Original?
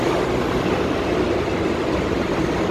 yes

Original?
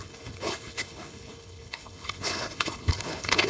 no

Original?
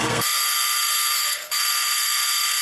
no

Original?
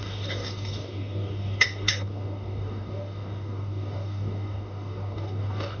no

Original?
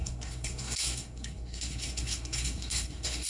no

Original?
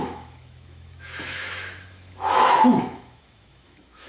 no